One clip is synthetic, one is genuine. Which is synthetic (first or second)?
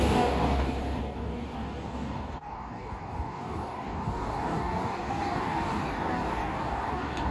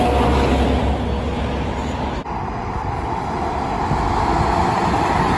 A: first